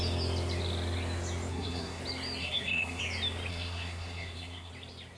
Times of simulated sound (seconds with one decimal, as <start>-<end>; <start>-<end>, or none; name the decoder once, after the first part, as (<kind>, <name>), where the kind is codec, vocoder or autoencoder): 1.5-2.0 (codec, SNAC); 2.4-3.0; 3.5-4.7